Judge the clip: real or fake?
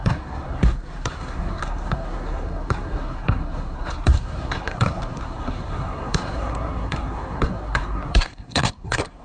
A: fake